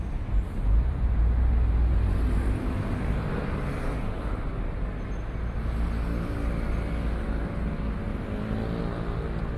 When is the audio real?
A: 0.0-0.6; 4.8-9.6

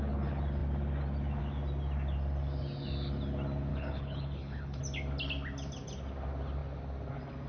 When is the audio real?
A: 0.0-3.7; 4.8-7.5

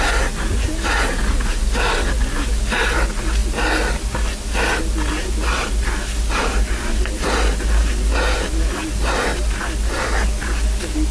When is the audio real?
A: 0.0-11.1

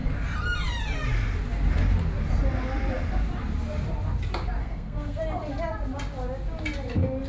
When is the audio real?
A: 0.0-4.6; 5.2-7.3

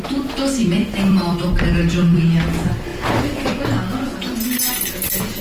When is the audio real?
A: 0.0-0.8; 2.2-5.4

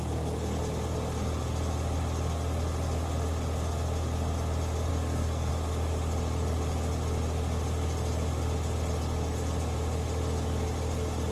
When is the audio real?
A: 0.0-4.9; 5.5-11.3

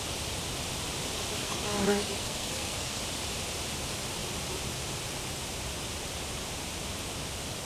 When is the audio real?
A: 0.0-1.4; 3.0-7.7